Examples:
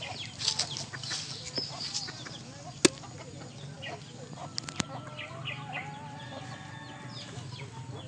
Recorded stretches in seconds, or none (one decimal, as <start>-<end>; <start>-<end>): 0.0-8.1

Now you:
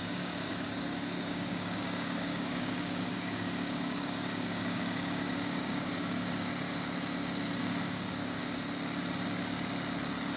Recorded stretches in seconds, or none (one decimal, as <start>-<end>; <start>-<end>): 6.5-7.6; 8.4-10.4

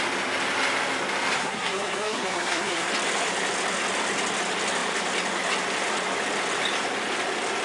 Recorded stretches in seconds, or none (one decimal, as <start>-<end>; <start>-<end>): 0.0-1.4; 2.9-7.6

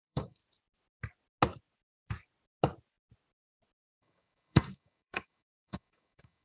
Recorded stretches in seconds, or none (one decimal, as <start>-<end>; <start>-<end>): 0.4-3.9

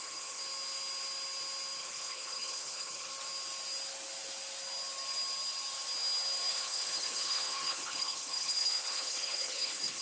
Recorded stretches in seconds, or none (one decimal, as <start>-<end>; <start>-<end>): 0.4-1.8; 3.1-6.5